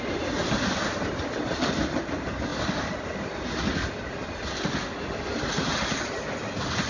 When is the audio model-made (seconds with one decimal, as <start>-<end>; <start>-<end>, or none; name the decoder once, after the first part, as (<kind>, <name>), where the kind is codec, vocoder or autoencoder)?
none